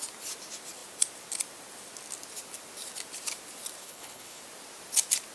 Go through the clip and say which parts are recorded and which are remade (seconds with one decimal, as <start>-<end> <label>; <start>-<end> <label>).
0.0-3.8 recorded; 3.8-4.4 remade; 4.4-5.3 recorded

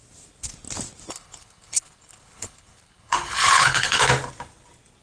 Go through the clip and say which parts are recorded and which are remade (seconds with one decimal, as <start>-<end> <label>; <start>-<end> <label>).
0.0-1.1 recorded; 1.1-4.1 remade; 4.1-5.0 recorded

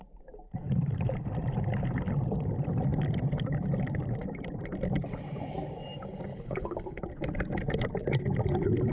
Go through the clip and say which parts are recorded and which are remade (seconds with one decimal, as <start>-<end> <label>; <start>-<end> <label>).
0.0-6.3 recorded; 6.3-7.0 remade; 7.0-8.9 recorded

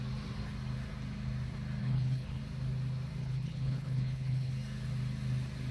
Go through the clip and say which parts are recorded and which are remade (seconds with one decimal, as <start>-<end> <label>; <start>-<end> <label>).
0.0-1.8 recorded; 1.8-2.4 remade; 2.4-3.2 recorded; 3.2-4.5 remade; 4.5-5.7 recorded

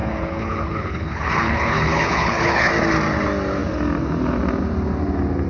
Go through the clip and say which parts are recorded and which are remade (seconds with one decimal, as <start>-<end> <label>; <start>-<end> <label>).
0.0-2.7 remade; 2.7-5.5 recorded

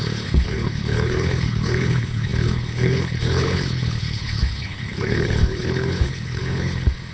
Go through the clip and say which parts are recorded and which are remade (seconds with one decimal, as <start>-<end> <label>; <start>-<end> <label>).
0.0-7.1 remade